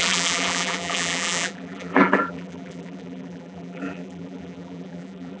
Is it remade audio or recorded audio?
remade